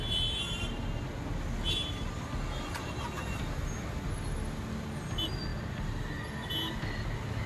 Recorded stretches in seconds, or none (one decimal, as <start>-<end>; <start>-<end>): 0.0-7.5

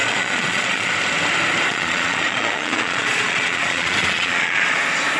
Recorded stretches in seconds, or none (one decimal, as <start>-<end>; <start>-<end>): 0.9-1.7; 4.8-5.2

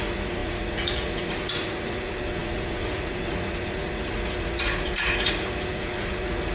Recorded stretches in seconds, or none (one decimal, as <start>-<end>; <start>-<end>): none

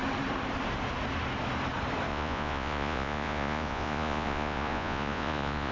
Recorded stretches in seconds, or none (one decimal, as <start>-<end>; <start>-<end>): 0.0-2.1

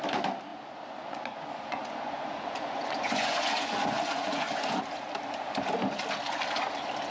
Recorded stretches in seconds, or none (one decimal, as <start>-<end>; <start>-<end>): 0.0-0.5; 4.8-7.1

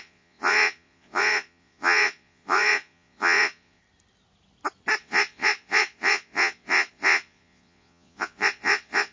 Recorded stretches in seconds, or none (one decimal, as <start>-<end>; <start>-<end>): 3.8-5.0